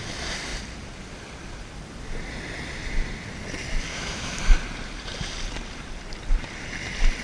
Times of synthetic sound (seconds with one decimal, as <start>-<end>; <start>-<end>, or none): 3.9-4.4